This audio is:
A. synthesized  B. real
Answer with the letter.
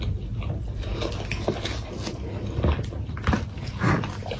B